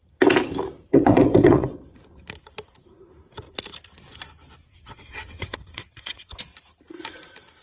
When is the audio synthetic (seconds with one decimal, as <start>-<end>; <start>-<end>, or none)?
0.9-1.8; 4.7-6.4